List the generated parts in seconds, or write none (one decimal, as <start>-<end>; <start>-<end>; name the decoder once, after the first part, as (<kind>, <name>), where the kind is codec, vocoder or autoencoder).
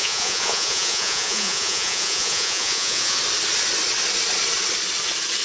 0.0-3.2 (vocoder, Vocos)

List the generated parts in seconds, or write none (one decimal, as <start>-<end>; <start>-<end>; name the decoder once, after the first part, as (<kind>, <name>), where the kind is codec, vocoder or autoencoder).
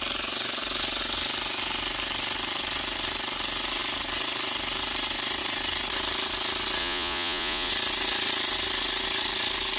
6.8-7.7 (vocoder, Vocos)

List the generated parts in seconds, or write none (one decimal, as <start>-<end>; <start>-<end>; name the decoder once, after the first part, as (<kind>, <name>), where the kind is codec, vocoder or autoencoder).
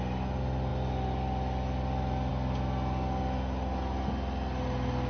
none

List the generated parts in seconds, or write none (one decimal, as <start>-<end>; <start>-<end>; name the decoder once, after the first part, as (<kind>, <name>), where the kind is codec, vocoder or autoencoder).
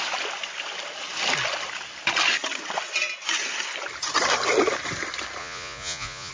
5.4-6.3 (vocoder, Vocos)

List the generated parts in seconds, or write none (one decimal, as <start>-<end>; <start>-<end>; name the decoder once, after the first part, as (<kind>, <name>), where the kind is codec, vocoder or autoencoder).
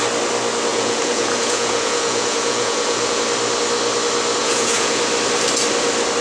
0.7-3.2 (vocoder, Vocos); 4.4-5.0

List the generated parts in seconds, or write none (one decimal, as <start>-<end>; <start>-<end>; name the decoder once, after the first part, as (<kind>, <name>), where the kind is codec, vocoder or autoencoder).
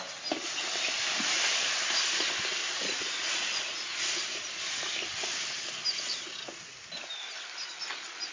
2.6-4.6 (vocoder, Vocos)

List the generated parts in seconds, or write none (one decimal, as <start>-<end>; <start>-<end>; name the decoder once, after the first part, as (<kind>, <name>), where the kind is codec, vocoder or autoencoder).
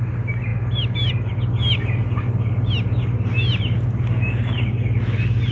none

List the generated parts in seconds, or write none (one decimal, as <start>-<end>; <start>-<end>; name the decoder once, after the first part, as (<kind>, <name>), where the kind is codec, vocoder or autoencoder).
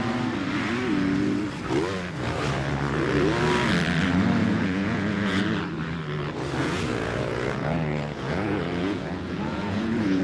4.4-5.4 (vocoder, Vocos); 6.6-10.2